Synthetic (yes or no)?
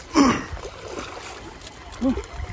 no